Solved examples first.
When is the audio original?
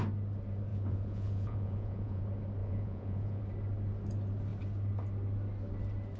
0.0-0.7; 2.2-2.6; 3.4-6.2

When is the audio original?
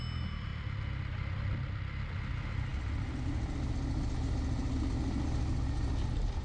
0.0-6.4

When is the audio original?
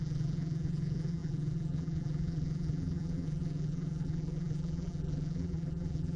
none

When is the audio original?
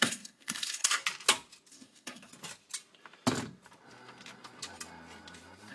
1.0-1.7; 2.3-5.7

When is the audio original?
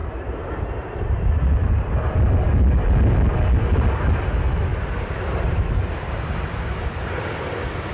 1.3-4.7; 6.3-7.9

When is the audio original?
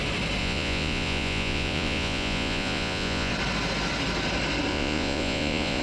0.0-0.4; 3.3-4.7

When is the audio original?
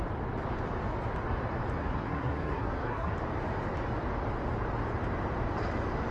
0.0-1.8; 3.1-6.1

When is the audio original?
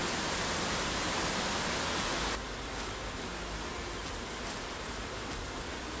0.0-6.0